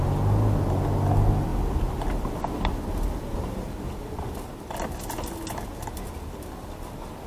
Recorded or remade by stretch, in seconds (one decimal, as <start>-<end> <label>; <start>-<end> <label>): 0.0-7.3 recorded